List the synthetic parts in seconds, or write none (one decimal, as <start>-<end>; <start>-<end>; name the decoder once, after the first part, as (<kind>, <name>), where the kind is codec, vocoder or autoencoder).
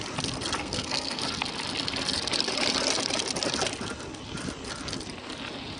0.6-1.2 (codec, SNAC)